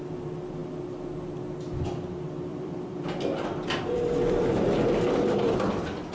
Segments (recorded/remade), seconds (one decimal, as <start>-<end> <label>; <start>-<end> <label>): 0.0-2.5 recorded; 2.5-6.1 remade